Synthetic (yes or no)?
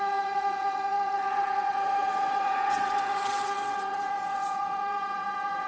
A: yes